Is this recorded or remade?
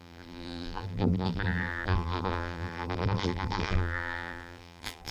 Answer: remade